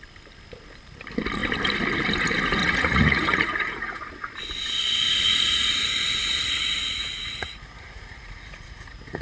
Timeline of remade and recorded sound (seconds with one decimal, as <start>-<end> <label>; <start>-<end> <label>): 0.0-2.6 recorded; 2.6-4.0 remade; 4.0-5.3 recorded; 5.3-9.2 remade